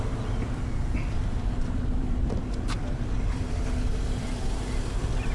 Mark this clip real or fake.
fake